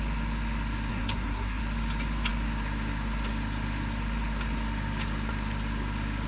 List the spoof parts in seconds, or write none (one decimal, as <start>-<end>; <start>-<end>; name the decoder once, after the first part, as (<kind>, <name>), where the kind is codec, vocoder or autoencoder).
0.9-1.6 (codec, SNAC)